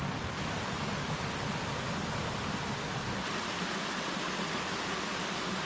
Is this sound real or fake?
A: real